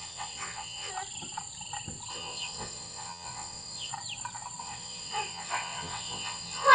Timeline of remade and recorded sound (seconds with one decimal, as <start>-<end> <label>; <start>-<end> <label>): 0.0-0.9 remade; 0.9-2.1 recorded; 2.1-3.9 remade; 3.9-4.6 recorded; 4.6-6.7 remade